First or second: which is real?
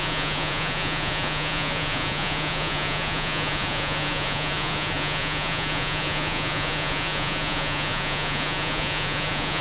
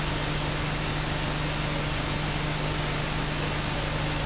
second